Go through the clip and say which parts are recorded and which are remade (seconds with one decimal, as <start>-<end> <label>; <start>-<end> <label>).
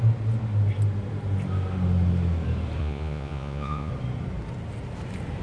0.0-2.8 recorded; 2.8-3.9 remade; 3.9-5.4 recorded